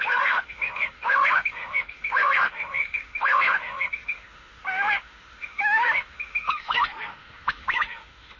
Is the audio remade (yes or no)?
yes